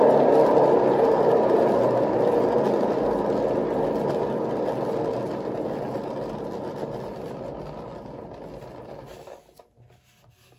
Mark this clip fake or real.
real